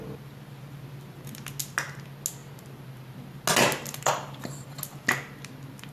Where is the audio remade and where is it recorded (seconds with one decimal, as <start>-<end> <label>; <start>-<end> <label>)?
0.0-5.9 recorded